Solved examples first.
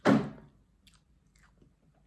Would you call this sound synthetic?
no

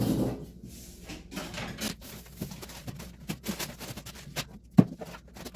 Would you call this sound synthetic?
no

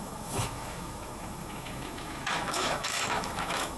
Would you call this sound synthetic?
yes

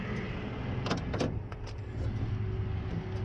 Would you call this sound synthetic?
no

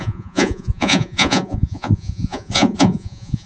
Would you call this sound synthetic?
yes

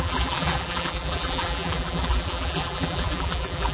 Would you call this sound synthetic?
yes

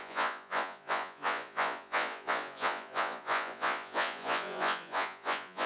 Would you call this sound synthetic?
yes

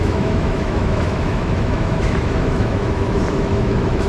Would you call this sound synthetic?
yes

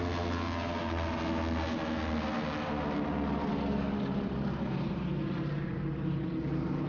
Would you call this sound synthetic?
no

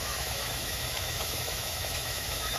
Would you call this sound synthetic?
yes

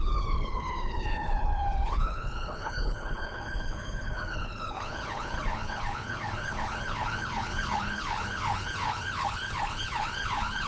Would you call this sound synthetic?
yes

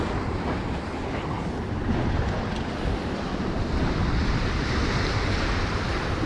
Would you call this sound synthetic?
no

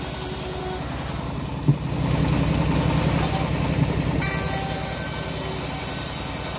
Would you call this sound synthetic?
no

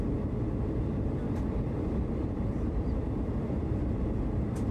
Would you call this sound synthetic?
no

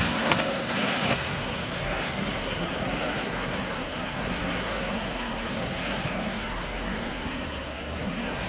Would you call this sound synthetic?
yes